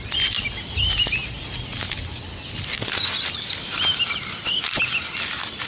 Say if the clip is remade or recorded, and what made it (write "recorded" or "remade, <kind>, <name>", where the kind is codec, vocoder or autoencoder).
recorded